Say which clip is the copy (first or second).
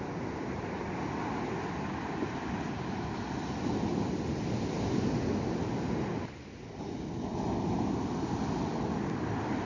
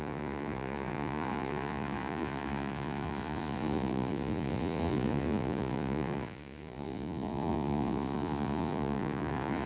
second